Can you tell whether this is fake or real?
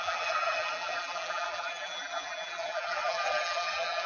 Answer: fake